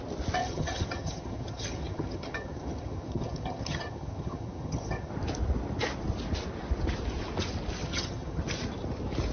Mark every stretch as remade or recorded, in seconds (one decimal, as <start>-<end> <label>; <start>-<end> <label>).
0.0-0.4 recorded; 0.4-5.1 remade; 5.1-7.8 recorded; 7.8-8.4 remade; 8.4-9.3 recorded